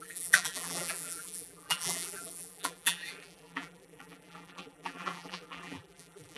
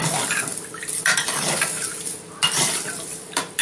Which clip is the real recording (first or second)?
second